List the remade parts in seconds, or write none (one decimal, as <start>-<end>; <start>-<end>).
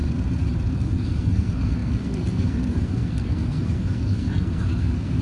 0.7-5.2